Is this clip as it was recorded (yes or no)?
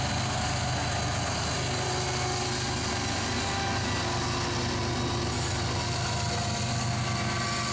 yes